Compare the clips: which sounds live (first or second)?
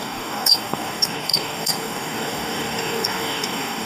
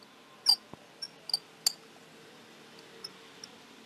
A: second